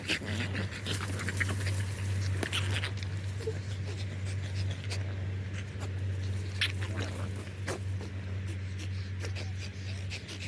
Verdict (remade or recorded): recorded